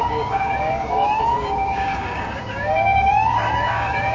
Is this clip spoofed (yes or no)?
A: yes